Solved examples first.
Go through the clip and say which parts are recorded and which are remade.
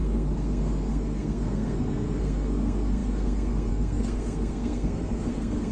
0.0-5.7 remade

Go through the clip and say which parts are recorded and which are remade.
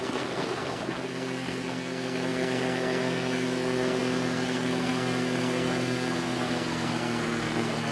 0.0-7.9 remade